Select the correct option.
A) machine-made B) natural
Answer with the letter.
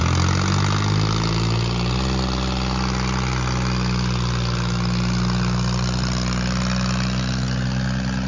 B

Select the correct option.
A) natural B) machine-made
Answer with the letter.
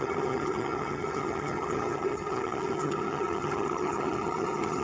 B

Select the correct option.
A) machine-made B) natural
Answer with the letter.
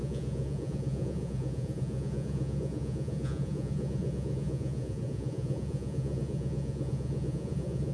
A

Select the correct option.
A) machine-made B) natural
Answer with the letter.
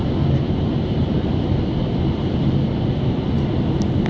B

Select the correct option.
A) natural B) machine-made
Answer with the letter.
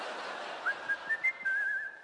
A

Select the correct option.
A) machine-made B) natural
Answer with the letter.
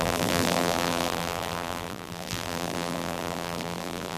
A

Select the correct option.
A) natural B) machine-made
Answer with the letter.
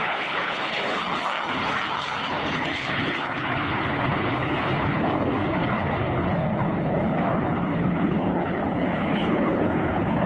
B